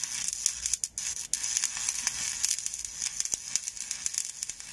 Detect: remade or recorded recorded